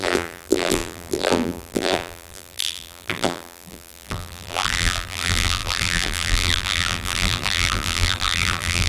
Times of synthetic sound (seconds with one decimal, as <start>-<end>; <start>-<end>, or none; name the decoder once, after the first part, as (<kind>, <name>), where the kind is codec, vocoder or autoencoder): 0.0-8.9 (vocoder, BigVGAN v2)